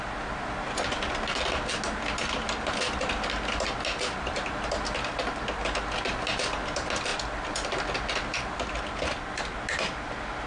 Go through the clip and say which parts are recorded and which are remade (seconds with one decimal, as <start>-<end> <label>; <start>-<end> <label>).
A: 0.0-10.5 recorded